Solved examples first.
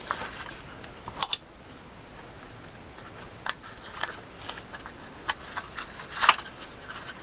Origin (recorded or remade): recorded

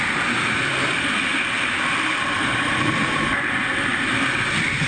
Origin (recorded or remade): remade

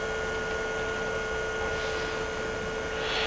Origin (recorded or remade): recorded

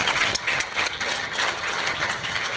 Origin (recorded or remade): remade